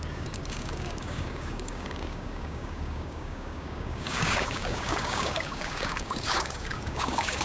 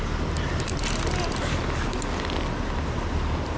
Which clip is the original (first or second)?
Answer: second